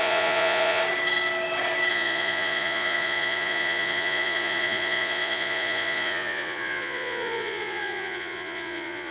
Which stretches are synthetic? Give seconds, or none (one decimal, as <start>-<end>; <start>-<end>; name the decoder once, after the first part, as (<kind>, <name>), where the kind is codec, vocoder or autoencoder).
0.0-0.8 (vocoder, Vocos); 1.9-9.1

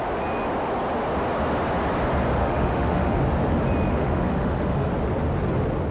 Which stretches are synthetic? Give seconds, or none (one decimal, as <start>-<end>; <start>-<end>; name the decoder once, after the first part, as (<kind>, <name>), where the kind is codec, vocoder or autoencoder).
2.4-3.2 (autoencoder, DAC-VAE); 3.9-4.9

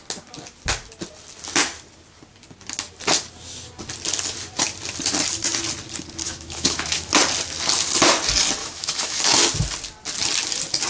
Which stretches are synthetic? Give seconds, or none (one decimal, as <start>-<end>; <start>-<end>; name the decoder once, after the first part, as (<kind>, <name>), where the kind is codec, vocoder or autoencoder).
6.2-7.1 (autoencoder, DAC-VAE); 8.6-9.2

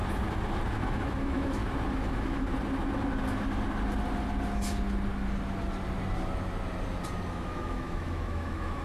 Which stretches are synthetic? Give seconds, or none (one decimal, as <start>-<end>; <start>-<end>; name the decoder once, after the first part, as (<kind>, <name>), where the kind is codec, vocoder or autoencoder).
0.7-1.6 (autoencoder, DAC-VAE); 2.1-2.5; 7.3-8.8

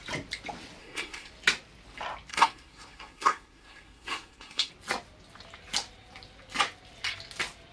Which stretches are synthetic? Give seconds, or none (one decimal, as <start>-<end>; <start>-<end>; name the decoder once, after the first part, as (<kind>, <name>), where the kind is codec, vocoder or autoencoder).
0.8-1.3 (codec, SNAC); 2.3-4.7